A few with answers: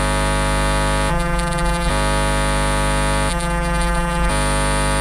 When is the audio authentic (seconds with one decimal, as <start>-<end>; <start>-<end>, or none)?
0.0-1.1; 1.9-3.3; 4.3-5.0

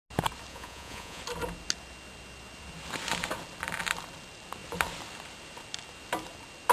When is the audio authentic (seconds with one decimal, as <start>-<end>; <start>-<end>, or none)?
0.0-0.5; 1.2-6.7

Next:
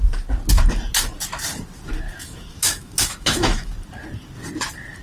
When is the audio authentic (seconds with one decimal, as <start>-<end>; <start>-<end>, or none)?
0.0-2.1; 3.7-5.0